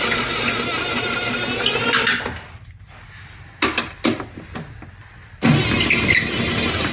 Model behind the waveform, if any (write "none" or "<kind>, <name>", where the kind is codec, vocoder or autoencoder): none